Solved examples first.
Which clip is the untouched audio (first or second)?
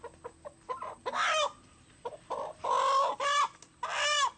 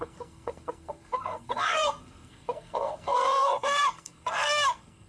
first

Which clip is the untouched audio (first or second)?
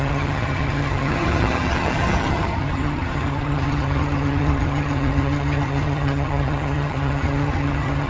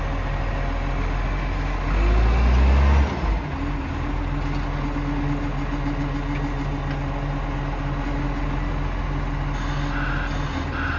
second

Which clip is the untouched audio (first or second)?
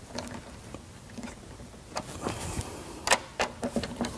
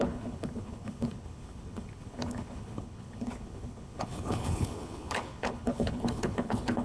first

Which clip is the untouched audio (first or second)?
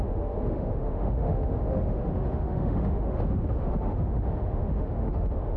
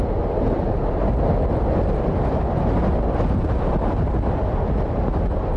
second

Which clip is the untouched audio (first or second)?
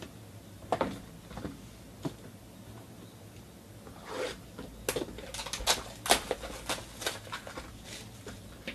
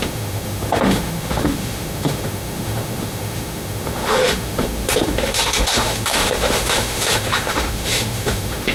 first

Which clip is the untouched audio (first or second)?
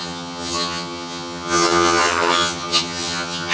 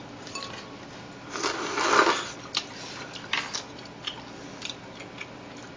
second